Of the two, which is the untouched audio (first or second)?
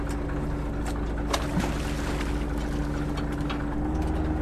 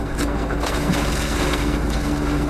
first